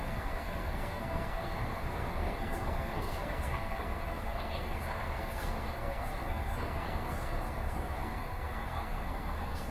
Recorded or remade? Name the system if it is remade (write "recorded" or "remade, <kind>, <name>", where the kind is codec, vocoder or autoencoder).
remade, codec, SNAC